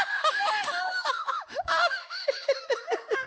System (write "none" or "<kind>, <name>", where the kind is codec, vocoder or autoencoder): autoencoder, DAC-VAE